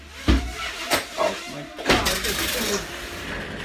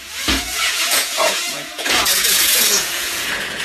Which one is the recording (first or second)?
first